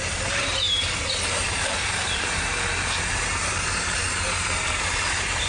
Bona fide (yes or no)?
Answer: no